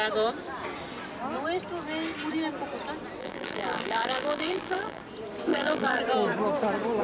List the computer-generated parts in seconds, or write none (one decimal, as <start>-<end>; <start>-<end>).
3.2-5.0; 5.5-6.0